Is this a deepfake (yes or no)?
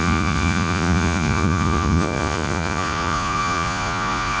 yes